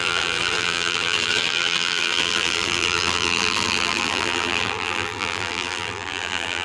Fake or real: fake